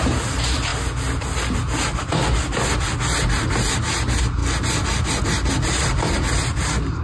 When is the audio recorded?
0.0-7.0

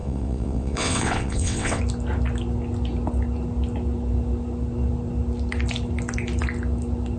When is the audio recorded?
1.8-7.2

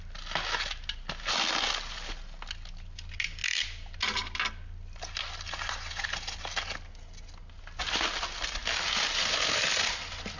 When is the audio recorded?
0.0-10.4

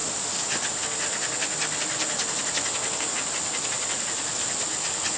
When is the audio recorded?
0.0-5.2